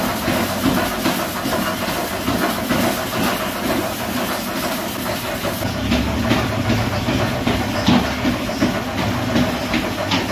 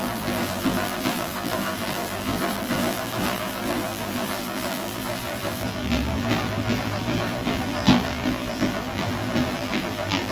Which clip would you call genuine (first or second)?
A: first